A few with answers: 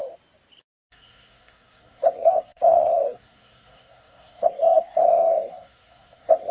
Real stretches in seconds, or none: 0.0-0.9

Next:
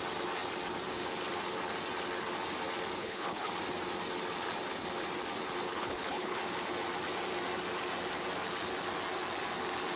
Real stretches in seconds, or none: 0.0-3.0; 3.5-5.7; 6.4-10.0

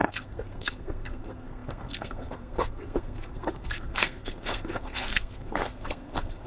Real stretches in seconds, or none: none

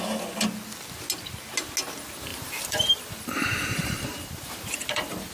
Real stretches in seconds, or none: 0.0-2.3